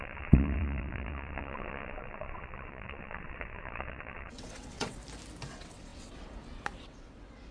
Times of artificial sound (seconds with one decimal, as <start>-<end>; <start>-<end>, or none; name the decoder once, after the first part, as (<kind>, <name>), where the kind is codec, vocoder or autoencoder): 0.0-5.0 (vocoder, WaveNeXt); 5.5-7.5